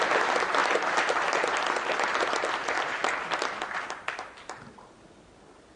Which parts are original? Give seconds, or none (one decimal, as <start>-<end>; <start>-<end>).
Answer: 0.0-5.8